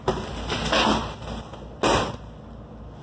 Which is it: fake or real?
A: real